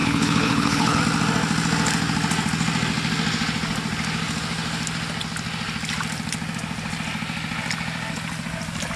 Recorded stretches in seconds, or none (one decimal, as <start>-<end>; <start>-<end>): 1.0-9.0